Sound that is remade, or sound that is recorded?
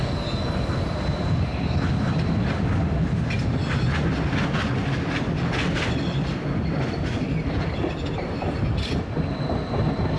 recorded